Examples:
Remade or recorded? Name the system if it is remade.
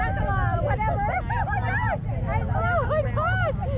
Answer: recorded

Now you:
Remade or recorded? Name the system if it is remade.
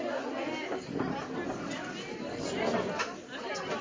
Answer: recorded